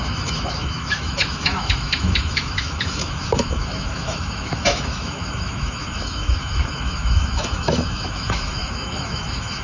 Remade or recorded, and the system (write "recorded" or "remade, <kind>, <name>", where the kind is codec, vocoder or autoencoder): remade, autoencoder, DAC-VAE